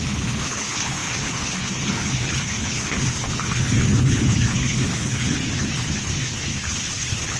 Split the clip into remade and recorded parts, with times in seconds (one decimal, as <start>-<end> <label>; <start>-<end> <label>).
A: 0.0-7.4 remade